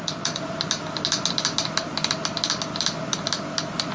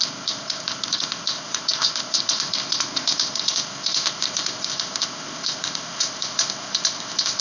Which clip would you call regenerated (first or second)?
second